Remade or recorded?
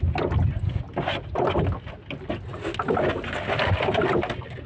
recorded